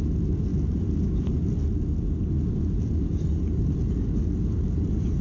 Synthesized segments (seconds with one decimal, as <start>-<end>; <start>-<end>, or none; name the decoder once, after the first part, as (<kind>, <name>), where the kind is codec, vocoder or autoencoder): none